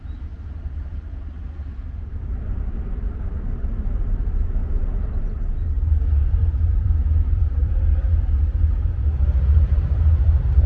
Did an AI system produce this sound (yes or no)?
yes